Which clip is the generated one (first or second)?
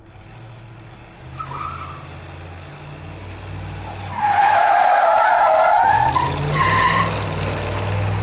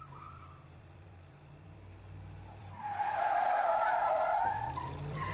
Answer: second